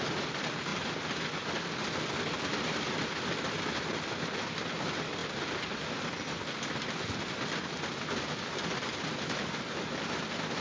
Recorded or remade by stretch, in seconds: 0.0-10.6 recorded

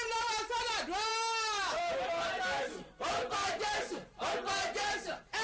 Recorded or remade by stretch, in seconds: 0.0-5.4 recorded

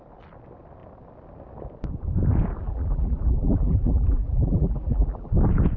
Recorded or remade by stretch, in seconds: 0.0-2.6 recorded; 2.6-5.3 remade; 5.3-5.8 recorded

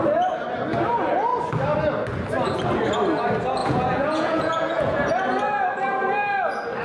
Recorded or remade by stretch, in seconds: 0.0-3.6 recorded; 3.6-5.0 remade; 5.0-6.8 recorded

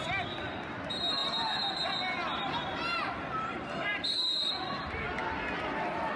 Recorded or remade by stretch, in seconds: 0.0-6.2 recorded

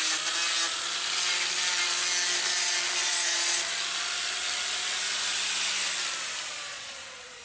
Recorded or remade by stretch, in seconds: 0.0-3.0 recorded; 3.0-3.5 remade; 3.5-6.7 recorded; 6.7-7.4 remade

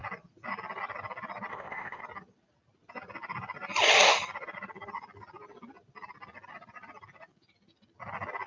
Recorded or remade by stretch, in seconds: 0.0-1.5 recorded; 1.5-2.0 remade; 2.0-8.5 recorded

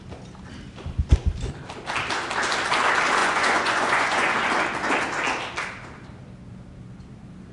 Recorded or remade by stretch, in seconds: 0.0-3.2 recorded; 3.2-4.3 remade; 4.3-7.5 recorded